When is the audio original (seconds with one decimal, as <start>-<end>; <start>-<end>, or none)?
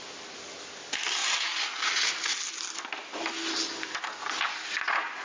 0.0-5.2